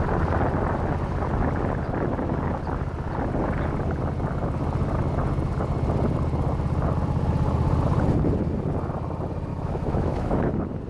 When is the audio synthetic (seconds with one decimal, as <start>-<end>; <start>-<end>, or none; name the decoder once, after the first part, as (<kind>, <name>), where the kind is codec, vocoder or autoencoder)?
9.5-10.5 (autoencoder, DAC-VAE)